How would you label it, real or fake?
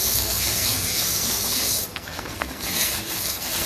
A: fake